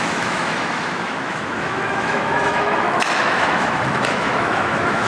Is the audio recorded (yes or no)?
no